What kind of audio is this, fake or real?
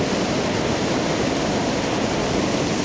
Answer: real